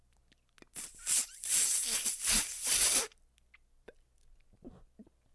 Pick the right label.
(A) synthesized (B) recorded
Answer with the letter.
B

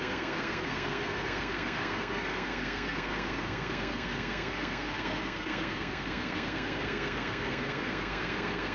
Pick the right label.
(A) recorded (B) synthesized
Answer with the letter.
B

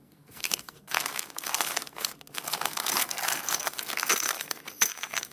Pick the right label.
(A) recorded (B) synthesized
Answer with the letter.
B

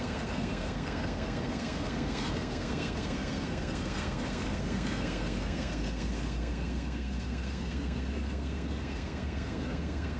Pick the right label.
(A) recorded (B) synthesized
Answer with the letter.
B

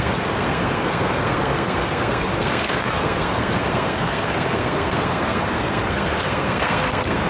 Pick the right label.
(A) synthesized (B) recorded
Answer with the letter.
A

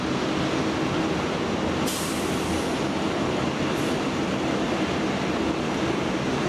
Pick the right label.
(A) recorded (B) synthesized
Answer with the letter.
A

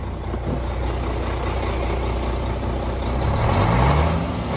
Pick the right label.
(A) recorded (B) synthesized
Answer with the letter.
A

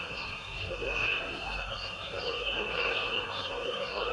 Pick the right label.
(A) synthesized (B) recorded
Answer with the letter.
A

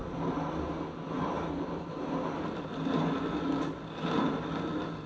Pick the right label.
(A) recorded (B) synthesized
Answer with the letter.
A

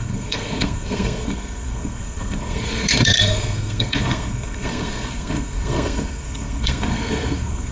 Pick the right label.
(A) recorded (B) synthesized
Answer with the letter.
B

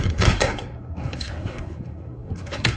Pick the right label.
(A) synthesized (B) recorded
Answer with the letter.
A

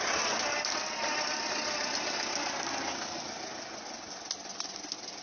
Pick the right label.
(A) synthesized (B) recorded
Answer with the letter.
B